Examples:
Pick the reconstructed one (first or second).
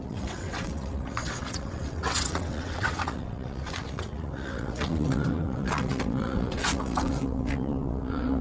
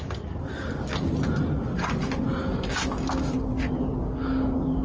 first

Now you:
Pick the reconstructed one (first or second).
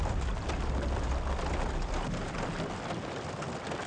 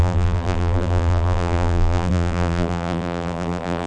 second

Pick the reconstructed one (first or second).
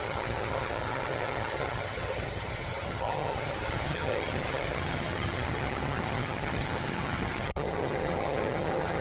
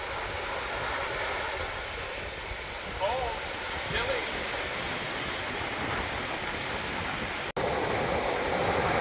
first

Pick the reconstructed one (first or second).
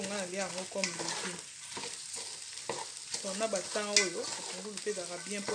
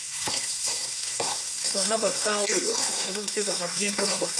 second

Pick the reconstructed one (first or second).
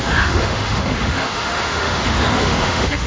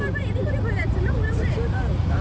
first